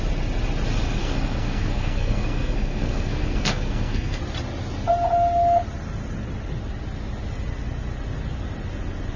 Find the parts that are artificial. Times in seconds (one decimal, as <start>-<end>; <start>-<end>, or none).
1.0-4.2